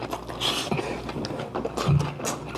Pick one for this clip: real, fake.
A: real